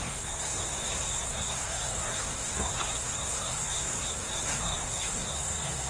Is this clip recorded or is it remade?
remade